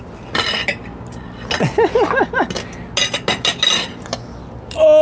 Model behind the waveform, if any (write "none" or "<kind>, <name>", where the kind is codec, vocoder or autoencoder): none